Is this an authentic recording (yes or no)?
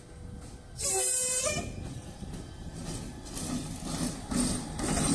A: yes